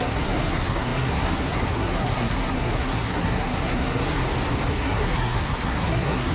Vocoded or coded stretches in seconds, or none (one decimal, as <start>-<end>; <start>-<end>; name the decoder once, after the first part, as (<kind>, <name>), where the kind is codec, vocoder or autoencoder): 0.0-4.2 (codec, SNAC); 4.7-6.3